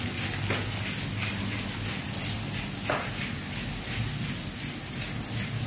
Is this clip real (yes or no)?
yes